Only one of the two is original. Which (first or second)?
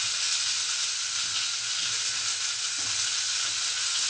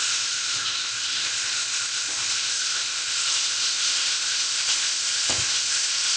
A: first